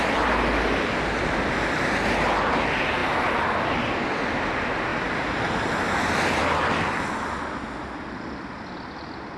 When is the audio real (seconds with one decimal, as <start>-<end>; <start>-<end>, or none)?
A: 0.0-4.9; 6.7-9.4